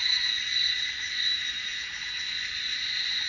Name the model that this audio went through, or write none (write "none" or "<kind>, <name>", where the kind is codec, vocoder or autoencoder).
none